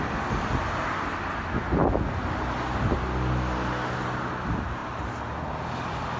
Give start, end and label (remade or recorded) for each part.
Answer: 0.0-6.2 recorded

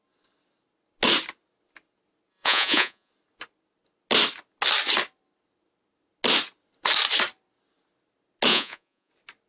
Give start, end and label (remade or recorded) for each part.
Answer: 0.0-2.3 recorded; 2.3-3.1 remade; 3.1-8.5 recorded; 8.5-9.1 remade; 9.1-9.5 recorded

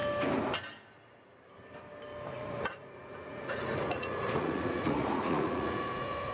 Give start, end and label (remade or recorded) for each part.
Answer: 0.0-2.3 recorded; 2.3-6.3 remade

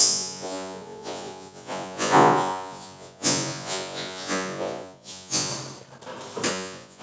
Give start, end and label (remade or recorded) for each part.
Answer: 0.0-5.5 remade; 5.5-6.5 recorded; 6.5-7.0 remade